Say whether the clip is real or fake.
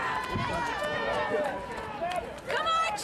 real